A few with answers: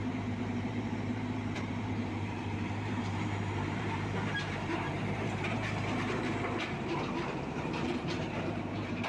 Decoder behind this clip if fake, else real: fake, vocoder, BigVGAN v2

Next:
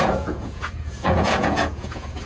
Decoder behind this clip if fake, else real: fake, vocoder, Vocos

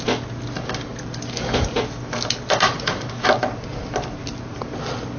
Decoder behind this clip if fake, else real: real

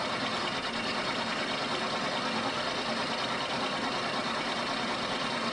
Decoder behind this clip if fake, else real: real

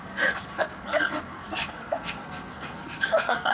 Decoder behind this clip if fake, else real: fake, codec, SNAC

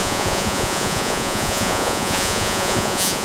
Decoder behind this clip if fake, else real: fake, vocoder, Vocos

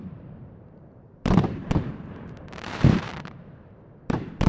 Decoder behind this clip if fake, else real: fake, vocoder, BigVGAN v2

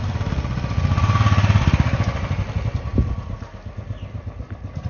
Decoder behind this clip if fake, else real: real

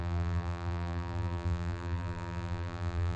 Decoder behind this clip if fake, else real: fake, vocoder, BigVGAN v2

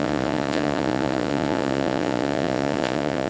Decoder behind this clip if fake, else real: fake, vocoder, Vocos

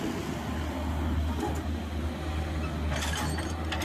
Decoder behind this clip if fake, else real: real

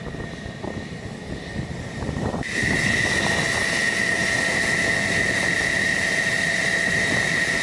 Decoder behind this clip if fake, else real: real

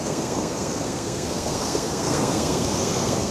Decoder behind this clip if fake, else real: fake, codec, SNAC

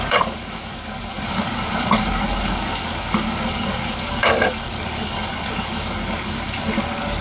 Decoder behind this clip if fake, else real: fake, codec, DAC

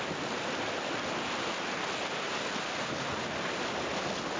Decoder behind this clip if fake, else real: real